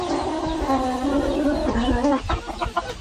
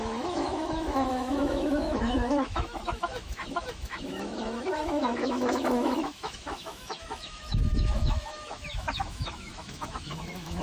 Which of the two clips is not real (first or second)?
second